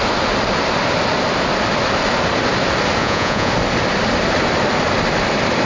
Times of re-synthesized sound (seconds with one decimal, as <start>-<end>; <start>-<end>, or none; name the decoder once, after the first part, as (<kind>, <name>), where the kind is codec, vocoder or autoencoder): 3.0-3.5 (vocoder, Vocos)

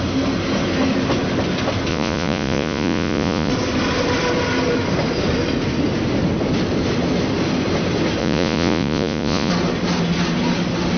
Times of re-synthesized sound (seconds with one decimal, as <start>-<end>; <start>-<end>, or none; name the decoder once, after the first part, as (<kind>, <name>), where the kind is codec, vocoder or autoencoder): 1.9-3.5 (vocoder, Vocos); 8.2-9.5

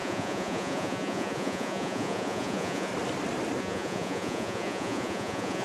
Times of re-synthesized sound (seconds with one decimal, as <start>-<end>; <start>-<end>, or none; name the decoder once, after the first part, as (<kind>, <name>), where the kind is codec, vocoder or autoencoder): 0.0-2.9 (vocoder, Vocos); 3.6-5.6

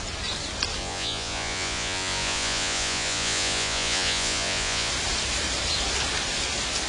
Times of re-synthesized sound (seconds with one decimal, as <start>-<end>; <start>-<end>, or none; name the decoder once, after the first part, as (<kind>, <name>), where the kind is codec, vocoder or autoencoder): 0.8-4.9 (vocoder, Vocos)

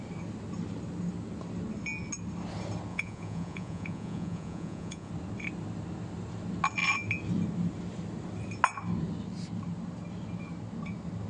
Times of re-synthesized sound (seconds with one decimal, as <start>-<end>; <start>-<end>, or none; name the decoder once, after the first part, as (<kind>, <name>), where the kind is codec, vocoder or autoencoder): 2.9-5.1 (vocoder, Vocos)

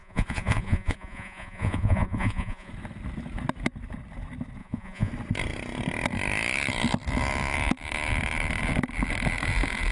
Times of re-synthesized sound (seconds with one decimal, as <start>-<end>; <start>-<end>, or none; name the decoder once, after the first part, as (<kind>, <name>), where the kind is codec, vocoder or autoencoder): 0.0-2.7 (vocoder, Vocos); 4.6-5.1

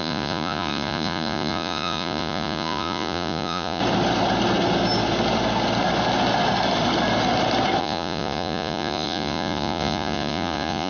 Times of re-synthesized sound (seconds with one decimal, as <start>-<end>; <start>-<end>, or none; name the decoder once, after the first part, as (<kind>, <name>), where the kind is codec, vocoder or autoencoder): 0.0-3.8 (vocoder, Vocos); 7.8-10.9

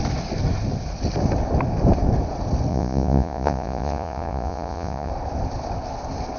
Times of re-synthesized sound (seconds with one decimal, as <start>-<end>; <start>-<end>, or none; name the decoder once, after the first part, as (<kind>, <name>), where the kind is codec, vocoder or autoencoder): 2.7-5.1 (vocoder, Vocos)